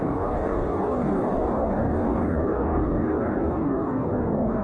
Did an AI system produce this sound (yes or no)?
yes